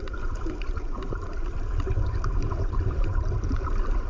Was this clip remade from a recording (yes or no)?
yes